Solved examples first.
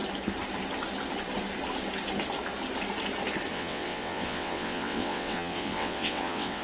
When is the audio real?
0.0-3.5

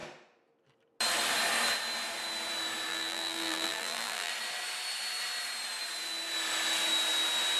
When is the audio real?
0.0-2.9; 4.3-7.6